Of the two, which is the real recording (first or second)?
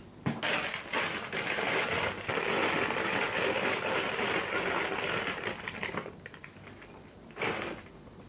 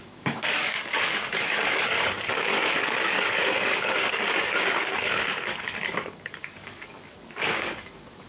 first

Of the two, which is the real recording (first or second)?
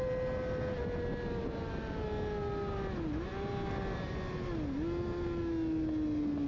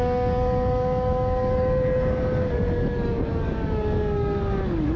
first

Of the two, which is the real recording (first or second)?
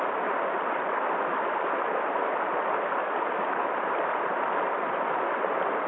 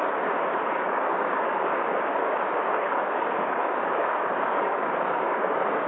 first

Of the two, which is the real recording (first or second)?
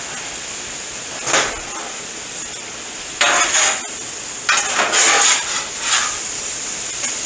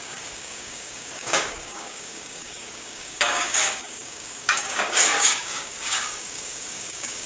first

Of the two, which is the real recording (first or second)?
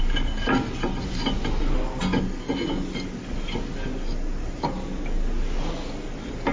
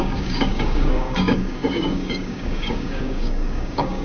first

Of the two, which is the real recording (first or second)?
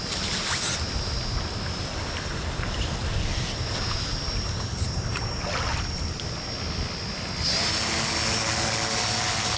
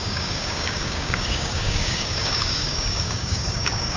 first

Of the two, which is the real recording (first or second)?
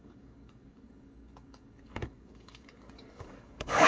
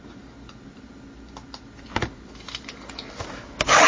second